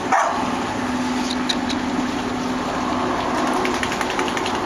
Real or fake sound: real